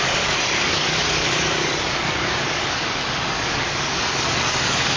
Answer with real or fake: fake